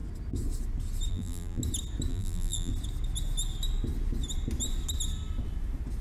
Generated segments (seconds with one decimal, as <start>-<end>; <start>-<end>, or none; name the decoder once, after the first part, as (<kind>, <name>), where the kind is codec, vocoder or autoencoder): 1.1-1.6 (vocoder, BigVGAN v2); 2.1-2.7

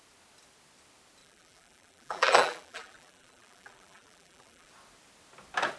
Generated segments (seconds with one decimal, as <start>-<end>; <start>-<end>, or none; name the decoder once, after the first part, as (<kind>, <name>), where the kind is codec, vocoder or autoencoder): 1.2-4.7 (vocoder, BigVGAN v2)